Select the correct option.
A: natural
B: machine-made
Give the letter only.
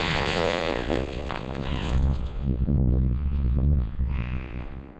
B